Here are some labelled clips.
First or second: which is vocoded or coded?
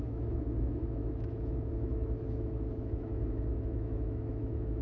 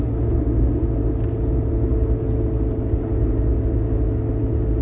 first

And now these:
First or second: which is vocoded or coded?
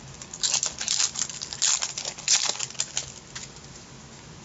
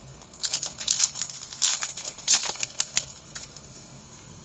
second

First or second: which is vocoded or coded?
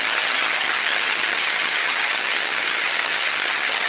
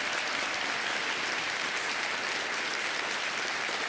first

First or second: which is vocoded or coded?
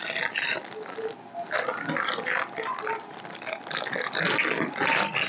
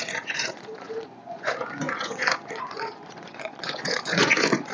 second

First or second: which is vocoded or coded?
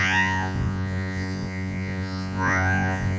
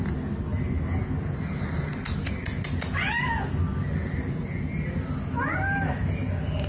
first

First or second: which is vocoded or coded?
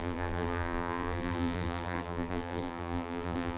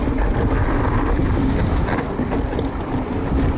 first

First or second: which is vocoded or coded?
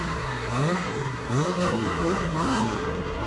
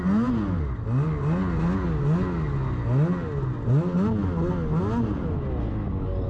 first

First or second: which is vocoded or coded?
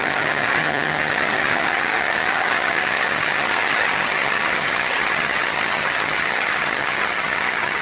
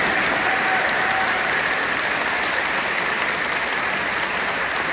first